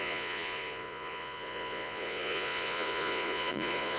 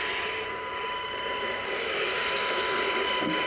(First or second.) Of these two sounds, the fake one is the first